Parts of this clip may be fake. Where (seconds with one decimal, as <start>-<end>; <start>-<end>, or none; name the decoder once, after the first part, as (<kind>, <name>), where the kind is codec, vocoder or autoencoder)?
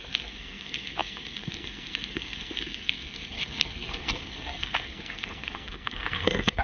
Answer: 0.0-6.6 (codec, SNAC)